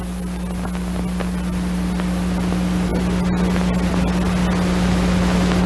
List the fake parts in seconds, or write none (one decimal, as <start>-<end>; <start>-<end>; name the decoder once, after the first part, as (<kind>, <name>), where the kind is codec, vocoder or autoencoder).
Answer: none